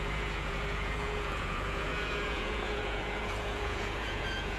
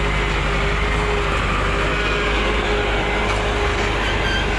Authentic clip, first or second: second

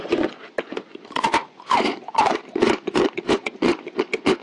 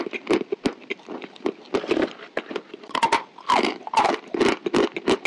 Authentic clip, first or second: second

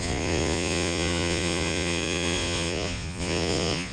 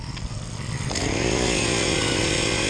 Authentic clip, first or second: second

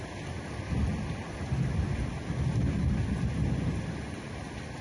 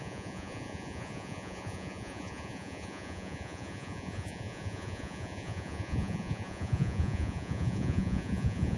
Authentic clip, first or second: first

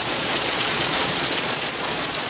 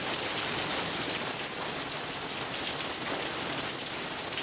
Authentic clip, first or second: second